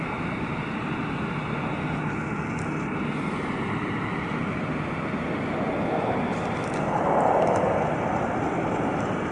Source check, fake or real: real